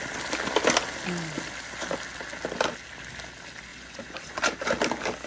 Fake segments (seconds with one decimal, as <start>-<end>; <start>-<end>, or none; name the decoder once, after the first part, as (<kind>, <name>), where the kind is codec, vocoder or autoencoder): 3.7-4.4 (vocoder, Vocos)